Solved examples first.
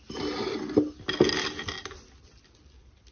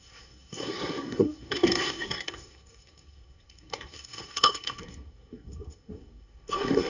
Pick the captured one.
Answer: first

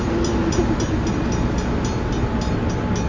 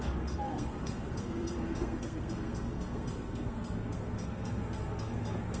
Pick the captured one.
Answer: first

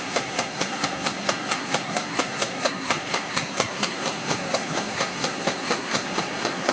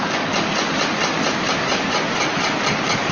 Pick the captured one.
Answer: second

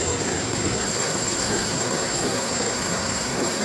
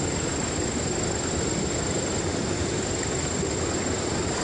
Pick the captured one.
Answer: second